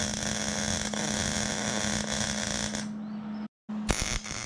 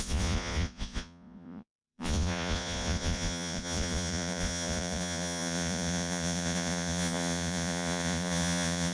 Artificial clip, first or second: second